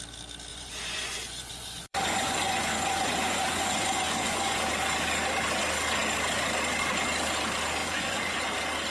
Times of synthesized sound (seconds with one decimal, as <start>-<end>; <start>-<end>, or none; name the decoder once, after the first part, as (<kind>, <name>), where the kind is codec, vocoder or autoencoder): 0.5-4.7 (vocoder, Vocos); 7.8-8.4